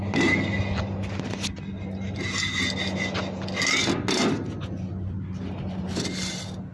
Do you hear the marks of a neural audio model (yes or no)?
no